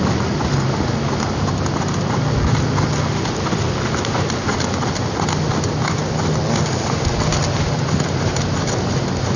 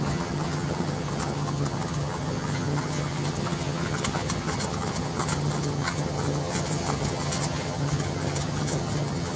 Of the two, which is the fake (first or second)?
second